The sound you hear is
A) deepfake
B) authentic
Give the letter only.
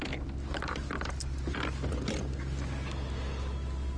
B